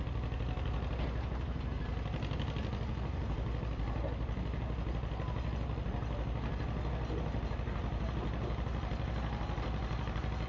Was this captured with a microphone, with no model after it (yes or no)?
yes